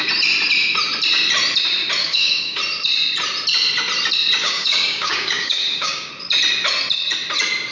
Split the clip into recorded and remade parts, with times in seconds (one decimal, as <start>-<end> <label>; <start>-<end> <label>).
0.0-2.0 recorded; 2.0-2.6 remade; 2.6-4.4 recorded; 4.4-6.1 remade; 6.1-7.7 recorded

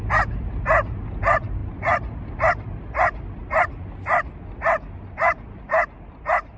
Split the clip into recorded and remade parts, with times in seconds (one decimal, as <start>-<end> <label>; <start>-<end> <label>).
0.0-6.6 recorded

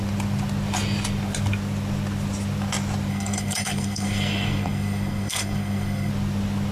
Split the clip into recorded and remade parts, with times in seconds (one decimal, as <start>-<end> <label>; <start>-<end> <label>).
0.0-3.1 recorded; 3.1-6.1 remade; 6.1-6.7 recorded

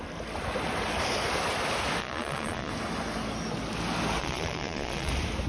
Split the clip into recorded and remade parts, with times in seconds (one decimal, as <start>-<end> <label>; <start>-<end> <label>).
0.0-2.0 recorded; 2.0-2.7 remade; 2.7-4.2 recorded; 4.2-5.1 remade; 5.1-5.5 recorded

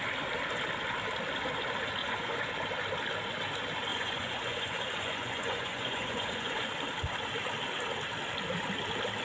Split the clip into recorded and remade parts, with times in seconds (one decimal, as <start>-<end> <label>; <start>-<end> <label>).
0.0-2.0 recorded; 2.0-2.5 remade; 2.5-3.9 recorded; 3.9-6.7 remade; 6.7-9.2 recorded

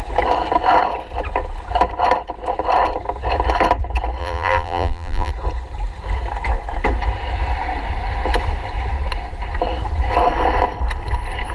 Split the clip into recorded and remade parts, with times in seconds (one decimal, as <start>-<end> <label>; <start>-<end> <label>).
0.0-4.2 recorded; 4.2-5.3 remade; 5.3-11.5 recorded

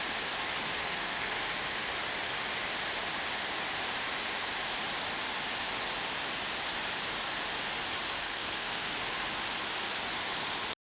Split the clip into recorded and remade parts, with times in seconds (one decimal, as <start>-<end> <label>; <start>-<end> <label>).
0.0-0.8 recorded; 0.8-1.4 remade; 1.4-8.2 recorded; 8.2-8.9 remade; 8.9-11.0 recorded